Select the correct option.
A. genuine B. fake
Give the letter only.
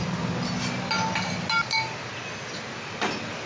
A